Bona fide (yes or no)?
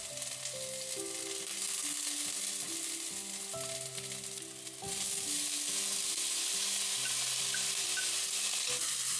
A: yes